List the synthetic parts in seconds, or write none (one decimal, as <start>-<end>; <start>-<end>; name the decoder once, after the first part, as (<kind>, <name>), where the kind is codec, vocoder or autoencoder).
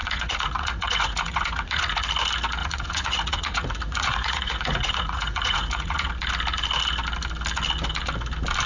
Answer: 0.0-2.0 (vocoder, Vocos); 2.6-6.1